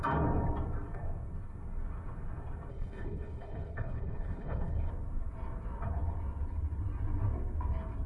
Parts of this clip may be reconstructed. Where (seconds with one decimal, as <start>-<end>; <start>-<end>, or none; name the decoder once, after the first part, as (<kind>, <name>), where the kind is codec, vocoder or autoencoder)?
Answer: 2.7-4.9 (codec, HILCodec)